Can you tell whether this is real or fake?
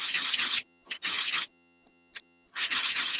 fake